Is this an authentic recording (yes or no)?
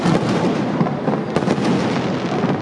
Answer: yes